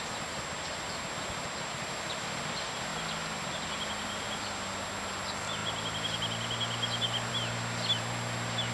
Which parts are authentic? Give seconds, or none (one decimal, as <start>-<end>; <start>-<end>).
0.0-8.7